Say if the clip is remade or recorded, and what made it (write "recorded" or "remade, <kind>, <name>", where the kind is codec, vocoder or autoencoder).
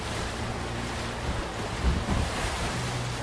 recorded